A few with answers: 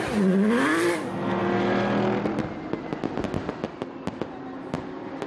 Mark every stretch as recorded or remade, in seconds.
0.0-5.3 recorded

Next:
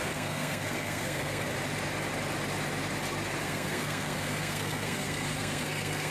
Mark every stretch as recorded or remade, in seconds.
0.0-1.5 remade; 1.5-3.4 recorded; 3.4-6.1 remade

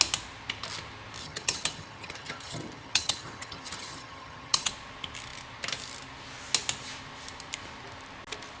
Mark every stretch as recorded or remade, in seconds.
0.0-1.2 recorded; 1.2-4.7 remade; 4.7-8.6 recorded

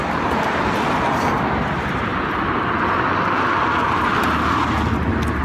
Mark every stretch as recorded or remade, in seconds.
0.0-5.4 recorded

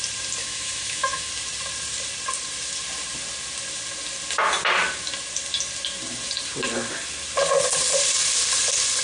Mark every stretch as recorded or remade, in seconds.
0.0-0.4 recorded; 0.4-1.3 remade; 1.3-9.0 recorded